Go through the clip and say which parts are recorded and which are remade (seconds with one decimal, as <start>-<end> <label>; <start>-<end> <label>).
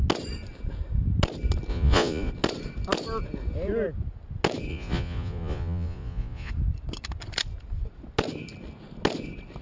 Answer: 0.0-1.7 recorded; 1.7-2.3 remade; 2.3-4.7 recorded; 4.7-6.5 remade; 6.5-9.6 recorded